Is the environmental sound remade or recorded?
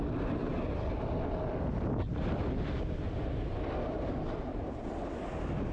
recorded